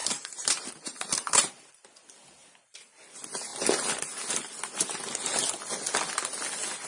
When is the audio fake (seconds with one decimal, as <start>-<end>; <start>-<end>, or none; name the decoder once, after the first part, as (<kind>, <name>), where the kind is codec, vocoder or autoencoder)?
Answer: 0.0-1.7 (vocoder, BigVGAN v2)